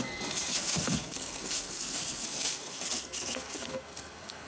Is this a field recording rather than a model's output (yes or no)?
no